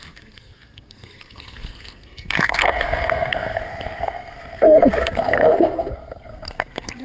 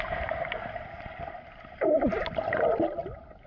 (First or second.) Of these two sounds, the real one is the second